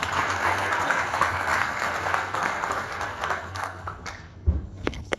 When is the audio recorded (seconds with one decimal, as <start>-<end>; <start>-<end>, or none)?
none